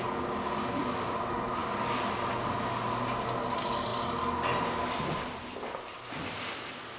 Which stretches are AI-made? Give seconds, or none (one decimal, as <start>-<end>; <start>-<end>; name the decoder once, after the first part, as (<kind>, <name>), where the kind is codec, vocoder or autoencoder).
none